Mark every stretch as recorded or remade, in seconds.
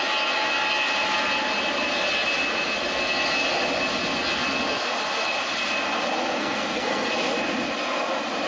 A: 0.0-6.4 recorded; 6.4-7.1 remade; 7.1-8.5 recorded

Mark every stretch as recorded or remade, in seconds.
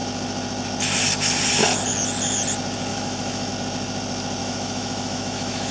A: 0.0-2.9 recorded; 2.9-3.5 remade; 3.5-4.4 recorded; 4.4-5.7 remade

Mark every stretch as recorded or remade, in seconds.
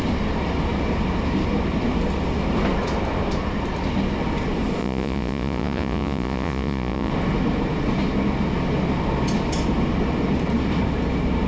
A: 0.0-4.8 recorded; 4.8-7.1 remade; 7.1-11.5 recorded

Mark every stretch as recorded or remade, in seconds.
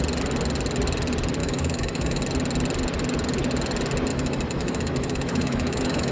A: 0.0-1.4 recorded; 1.4-2.2 remade; 2.2-4.1 recorded; 4.1-6.1 remade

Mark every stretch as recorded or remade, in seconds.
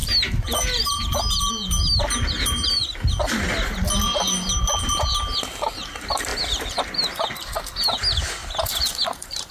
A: 0.0-6.3 recorded; 6.3-6.8 remade; 6.8-8.4 recorded; 8.4-9.5 remade